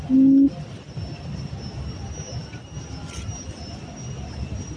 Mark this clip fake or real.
real